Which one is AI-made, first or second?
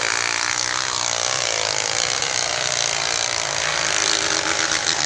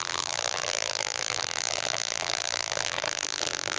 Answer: second